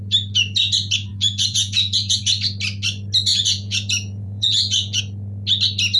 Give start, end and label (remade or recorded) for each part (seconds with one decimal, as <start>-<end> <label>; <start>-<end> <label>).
0.0-1.1 recorded; 1.1-2.2 remade; 2.2-3.3 recorded; 3.3-5.0 remade; 5.0-6.0 recorded